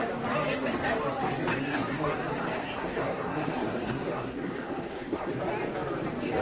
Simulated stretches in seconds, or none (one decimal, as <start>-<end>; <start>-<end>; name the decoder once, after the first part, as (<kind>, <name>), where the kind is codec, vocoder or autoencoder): 1.6-2.1 (codec, SNAC); 2.6-5.3